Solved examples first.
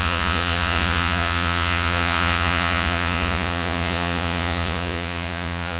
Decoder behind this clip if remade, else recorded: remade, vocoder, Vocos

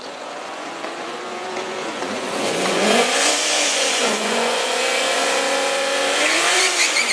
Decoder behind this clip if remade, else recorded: remade, vocoder, Vocos